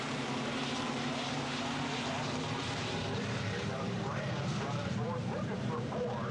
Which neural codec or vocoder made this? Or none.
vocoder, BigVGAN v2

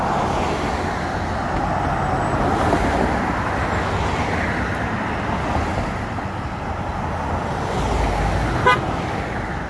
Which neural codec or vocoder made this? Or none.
none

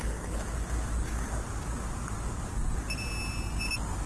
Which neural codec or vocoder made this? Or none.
none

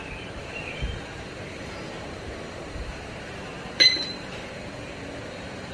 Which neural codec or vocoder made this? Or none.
vocoder, BigVGAN v2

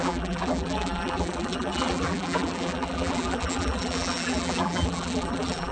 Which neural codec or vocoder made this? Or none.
vocoder, BigVGAN v2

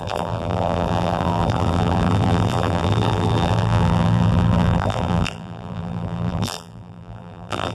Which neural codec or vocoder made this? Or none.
vocoder, BigVGAN v2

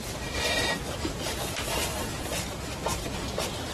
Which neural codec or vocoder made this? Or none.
vocoder, BigVGAN v2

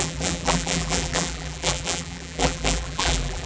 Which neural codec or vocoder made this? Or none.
vocoder, BigVGAN v2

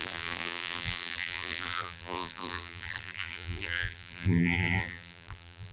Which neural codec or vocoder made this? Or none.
vocoder, BigVGAN v2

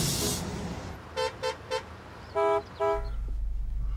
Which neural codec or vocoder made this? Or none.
none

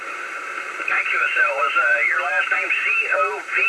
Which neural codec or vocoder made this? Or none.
vocoder, BigVGAN v2